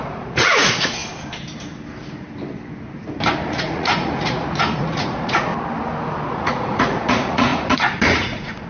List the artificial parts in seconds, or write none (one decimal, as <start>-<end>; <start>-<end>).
0.0-1.0; 3.5-5.5; 6.3-8.7